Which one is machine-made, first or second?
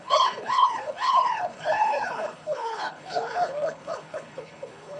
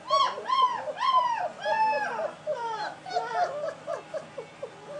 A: first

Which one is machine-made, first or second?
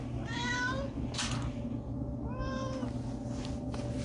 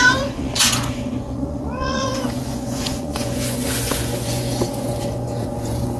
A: second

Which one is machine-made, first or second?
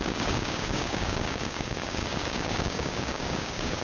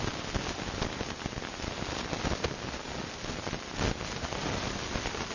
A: first